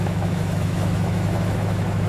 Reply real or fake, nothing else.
fake